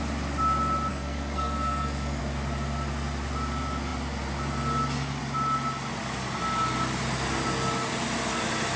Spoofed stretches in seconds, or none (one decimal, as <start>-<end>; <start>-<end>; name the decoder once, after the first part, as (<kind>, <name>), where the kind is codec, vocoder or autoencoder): 0.9-2.2 (codec, SNAC)